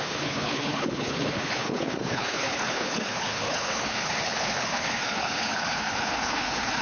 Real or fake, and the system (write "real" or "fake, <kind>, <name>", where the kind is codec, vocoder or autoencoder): fake, codec, HILCodec